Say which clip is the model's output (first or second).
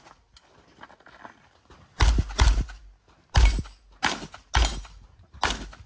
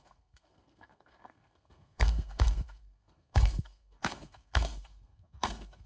second